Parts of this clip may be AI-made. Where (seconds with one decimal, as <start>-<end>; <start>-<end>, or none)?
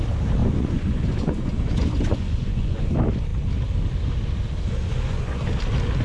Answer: 0.4-2.9; 4.9-5.4